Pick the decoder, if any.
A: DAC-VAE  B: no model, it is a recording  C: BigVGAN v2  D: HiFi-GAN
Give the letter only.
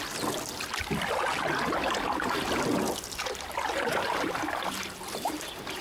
B